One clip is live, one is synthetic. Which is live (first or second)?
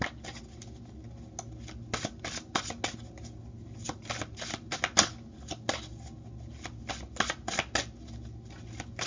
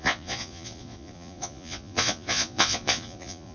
first